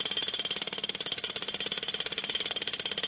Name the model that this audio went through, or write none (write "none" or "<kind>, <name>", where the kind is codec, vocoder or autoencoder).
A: none